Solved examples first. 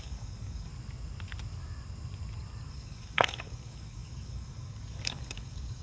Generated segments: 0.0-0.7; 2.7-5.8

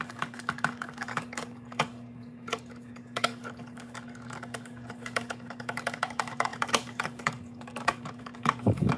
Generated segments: 0.0-9.0

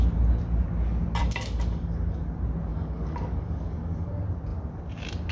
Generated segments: 1.2-2.2; 2.7-4.1

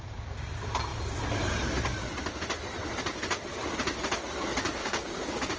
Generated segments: 4.8-5.6